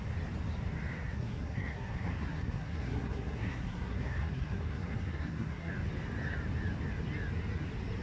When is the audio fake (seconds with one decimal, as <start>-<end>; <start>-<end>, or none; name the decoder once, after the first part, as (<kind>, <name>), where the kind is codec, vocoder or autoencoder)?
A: 0.9-5.7 (codec, SNAC)